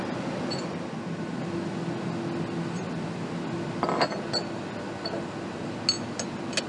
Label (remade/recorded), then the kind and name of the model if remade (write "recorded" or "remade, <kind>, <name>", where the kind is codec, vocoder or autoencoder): recorded